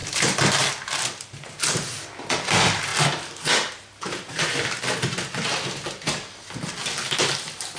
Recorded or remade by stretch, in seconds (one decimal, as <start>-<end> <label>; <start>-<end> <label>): 0.0-7.8 recorded